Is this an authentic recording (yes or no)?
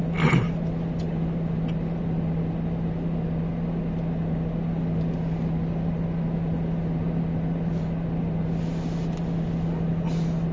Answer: yes